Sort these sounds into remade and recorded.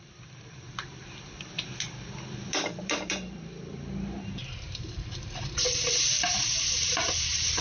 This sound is remade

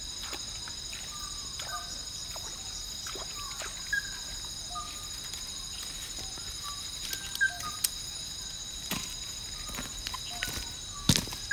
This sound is recorded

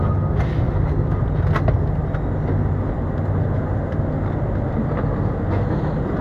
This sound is recorded